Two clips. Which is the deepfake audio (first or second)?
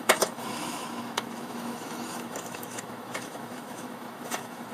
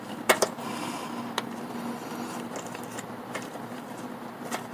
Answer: first